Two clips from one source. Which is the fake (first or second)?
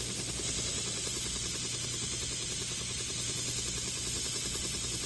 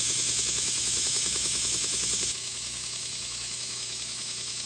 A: second